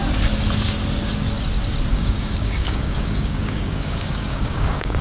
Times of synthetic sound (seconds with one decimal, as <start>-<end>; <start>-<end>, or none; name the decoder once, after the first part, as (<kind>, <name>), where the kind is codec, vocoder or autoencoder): 1.9-5.0 (codec, DAC)